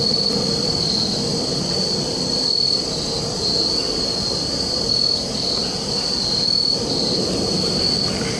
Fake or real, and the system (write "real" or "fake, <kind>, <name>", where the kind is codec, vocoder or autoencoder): real